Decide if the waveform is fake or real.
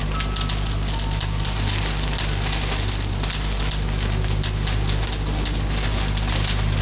real